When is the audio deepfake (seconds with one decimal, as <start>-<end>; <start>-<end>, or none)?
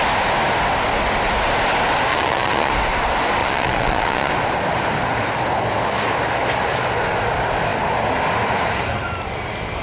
2.1-2.7; 3.4-4.3